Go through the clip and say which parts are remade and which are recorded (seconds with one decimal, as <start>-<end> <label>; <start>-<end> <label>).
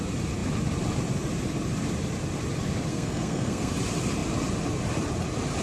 0.0-2.9 recorded; 2.9-3.7 remade; 3.7-5.6 recorded